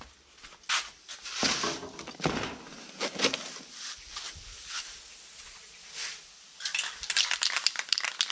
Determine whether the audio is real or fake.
real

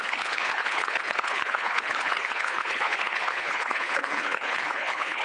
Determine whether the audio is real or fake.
fake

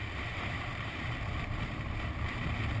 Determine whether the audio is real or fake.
fake